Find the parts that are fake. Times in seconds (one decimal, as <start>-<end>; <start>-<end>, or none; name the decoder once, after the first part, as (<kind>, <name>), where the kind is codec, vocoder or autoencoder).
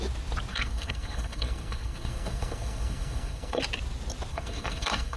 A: 0.5-3.6 (codec, SNAC); 4.3-5.2